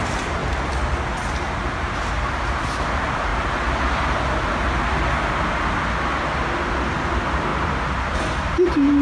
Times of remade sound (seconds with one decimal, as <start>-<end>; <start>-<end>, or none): 0.0-0.4; 1.8-3.3; 6.8-9.0